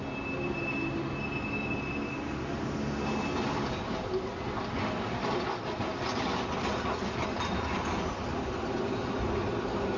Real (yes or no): yes